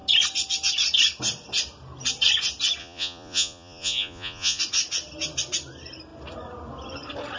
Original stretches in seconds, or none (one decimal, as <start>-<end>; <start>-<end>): 0.0-2.8; 4.6-7.4